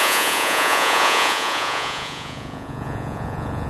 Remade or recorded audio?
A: remade